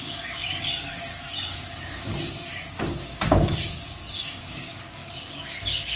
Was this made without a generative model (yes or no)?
no